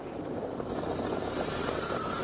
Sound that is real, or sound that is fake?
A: real